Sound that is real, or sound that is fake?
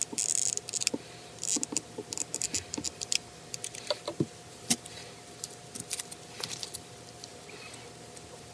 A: real